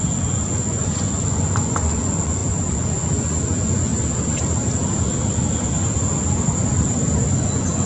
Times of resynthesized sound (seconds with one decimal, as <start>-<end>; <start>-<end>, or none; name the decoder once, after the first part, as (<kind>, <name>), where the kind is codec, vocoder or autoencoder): 0.0-3.9 (vocoder, Vocos); 7.3-7.9